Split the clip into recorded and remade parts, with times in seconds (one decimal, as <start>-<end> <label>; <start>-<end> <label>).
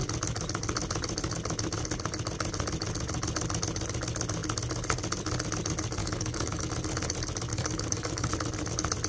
0.0-6.0 recorded; 6.0-6.6 remade; 6.6-7.5 recorded; 7.5-8.3 remade; 8.3-9.1 recorded